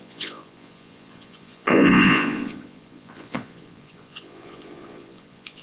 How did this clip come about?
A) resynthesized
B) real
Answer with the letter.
A